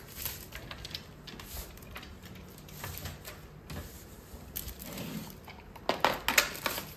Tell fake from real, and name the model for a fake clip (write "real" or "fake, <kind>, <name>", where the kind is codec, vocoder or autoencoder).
real